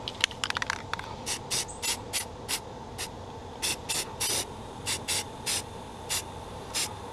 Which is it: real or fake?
real